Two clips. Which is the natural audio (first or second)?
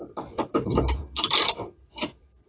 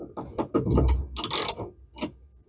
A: second